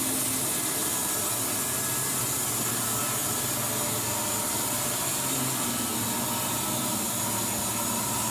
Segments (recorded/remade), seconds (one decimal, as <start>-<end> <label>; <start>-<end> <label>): 0.0-8.3 recorded